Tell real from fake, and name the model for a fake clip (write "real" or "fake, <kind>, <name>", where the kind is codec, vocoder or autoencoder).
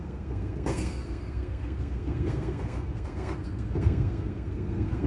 fake, codec, SNAC